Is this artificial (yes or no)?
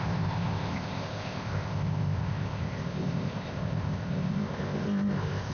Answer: yes